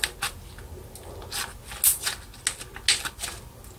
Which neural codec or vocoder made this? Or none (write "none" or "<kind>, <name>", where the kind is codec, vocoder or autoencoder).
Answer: none